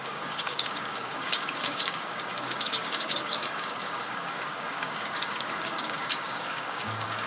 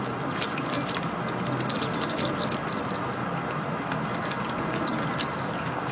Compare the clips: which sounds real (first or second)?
second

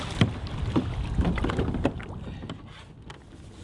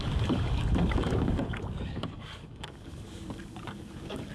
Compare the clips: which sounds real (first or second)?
first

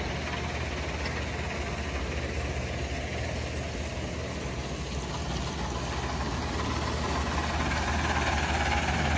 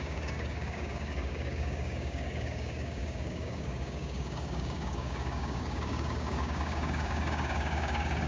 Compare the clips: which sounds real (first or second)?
first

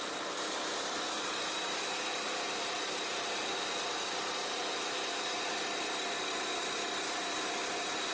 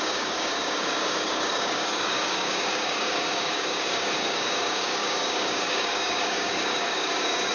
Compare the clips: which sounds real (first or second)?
first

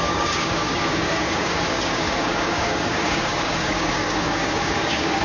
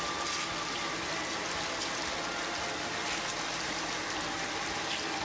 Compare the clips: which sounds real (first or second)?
second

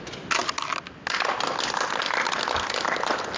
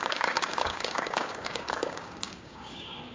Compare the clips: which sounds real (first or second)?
first